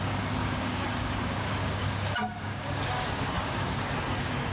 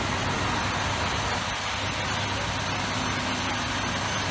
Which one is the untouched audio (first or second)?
second